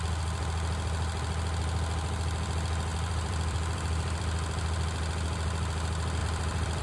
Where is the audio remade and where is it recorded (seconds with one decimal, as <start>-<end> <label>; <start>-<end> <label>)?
0.0-2.9 recorded; 2.9-4.2 remade; 4.2-6.2 recorded; 6.2-6.8 remade